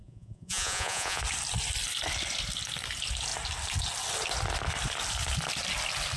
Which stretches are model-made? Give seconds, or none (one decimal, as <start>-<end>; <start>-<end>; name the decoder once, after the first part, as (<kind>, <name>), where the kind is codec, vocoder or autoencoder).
0.0-1.2 (vocoder, Vocos)